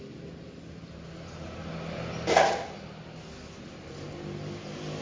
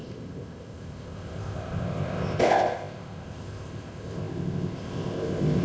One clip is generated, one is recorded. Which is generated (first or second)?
second